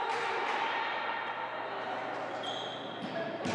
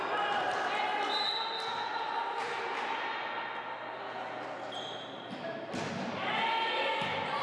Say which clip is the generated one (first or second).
first